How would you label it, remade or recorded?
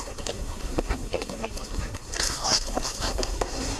remade